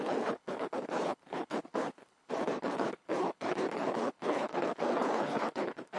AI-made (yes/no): yes